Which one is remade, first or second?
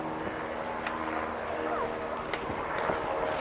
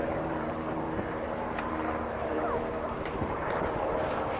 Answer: second